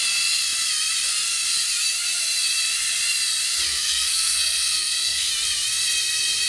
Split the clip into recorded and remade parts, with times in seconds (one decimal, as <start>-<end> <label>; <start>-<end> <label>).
0.0-3.7 recorded; 3.7-5.3 remade; 5.3-6.5 recorded